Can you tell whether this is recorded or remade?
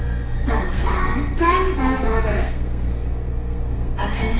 remade